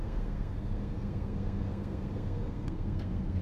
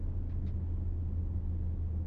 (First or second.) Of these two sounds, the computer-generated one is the first